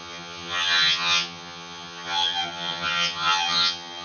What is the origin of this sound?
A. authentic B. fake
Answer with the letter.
B